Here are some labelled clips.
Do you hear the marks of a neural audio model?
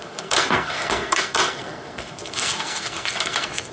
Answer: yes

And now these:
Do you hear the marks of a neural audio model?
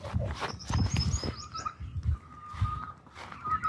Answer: no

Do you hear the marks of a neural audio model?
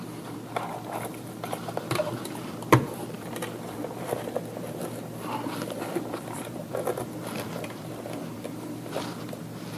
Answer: yes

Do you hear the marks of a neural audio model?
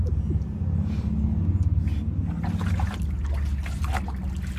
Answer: no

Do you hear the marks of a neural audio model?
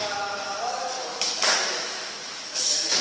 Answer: yes